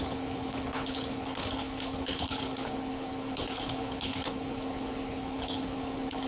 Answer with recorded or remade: remade